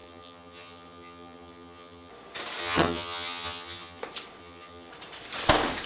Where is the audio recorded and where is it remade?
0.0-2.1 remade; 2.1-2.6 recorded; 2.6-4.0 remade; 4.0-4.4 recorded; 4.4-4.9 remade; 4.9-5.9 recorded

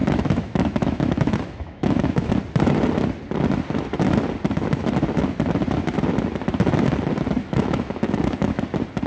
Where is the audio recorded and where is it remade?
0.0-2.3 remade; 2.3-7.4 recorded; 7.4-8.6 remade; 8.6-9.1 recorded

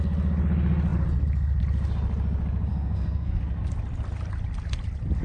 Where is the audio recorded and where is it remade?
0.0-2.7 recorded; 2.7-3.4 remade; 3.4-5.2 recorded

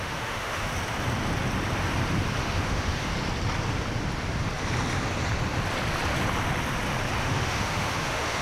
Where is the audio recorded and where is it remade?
0.0-0.7 remade; 0.7-2.4 recorded; 2.4-3.1 remade; 3.1-7.2 recorded; 7.2-8.4 remade

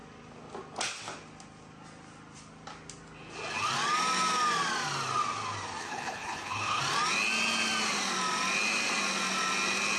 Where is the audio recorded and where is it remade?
0.0-5.8 recorded; 5.8-6.8 remade; 6.8-10.0 recorded

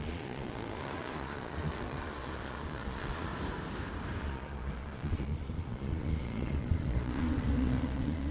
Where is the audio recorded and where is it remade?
0.0-3.3 remade; 3.3-4.2 recorded; 4.2-8.3 remade

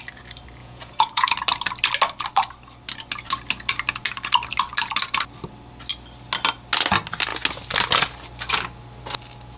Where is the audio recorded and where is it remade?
0.0-0.6 recorded; 0.6-1.3 remade; 1.3-9.6 recorded

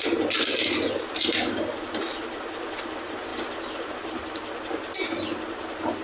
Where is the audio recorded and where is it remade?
0.0-6.0 recorded